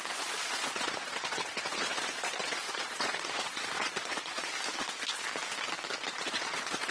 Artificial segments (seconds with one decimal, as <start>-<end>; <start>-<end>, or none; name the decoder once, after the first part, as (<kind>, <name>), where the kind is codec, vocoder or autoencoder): 0.0-4.5 (vocoder, Vocos); 6.2-6.9